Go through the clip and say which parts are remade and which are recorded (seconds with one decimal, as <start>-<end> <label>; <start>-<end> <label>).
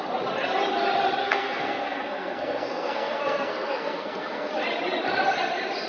0.0-1.2 recorded; 1.2-4.5 remade; 4.5-5.9 recorded